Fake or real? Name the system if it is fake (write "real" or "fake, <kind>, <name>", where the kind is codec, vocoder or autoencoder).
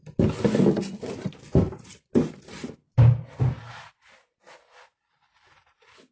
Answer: real